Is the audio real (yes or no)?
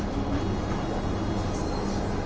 yes